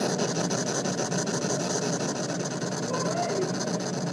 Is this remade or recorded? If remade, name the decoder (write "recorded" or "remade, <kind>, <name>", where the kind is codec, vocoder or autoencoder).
recorded